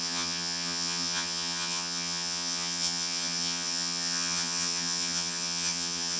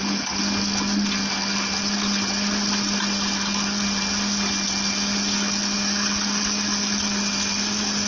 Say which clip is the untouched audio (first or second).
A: second